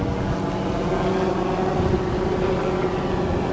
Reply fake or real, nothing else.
real